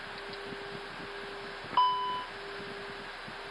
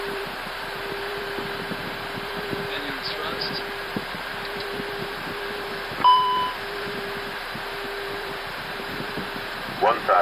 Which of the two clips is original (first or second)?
first